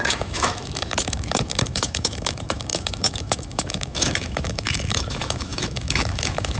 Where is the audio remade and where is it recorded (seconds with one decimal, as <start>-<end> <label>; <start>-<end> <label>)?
0.0-6.6 remade